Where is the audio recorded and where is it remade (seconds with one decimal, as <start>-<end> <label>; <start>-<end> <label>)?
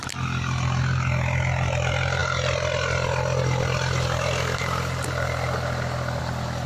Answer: 0.0-6.7 recorded